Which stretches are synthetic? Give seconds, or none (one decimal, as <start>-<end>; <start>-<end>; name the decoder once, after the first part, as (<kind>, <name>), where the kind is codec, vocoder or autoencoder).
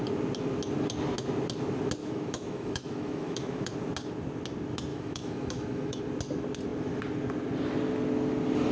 2.0-3.7 (autoencoder, DAC-VAE); 4.9-6.0